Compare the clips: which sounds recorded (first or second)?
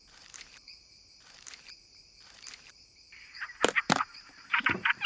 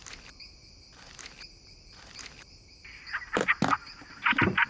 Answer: second